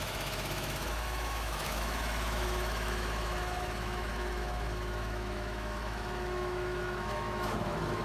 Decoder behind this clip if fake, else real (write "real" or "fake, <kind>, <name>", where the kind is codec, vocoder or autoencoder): fake, autoencoder, DAC-VAE